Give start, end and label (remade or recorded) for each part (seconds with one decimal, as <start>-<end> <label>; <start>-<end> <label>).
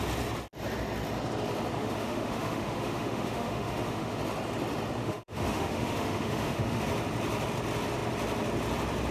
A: 0.0-1.8 recorded; 1.8-4.2 remade; 4.2-5.0 recorded; 5.0-6.8 remade; 6.8-9.1 recorded